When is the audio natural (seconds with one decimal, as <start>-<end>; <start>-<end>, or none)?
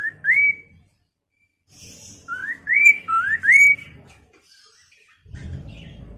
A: 0.0-2.4; 3.4-5.2; 5.7-6.2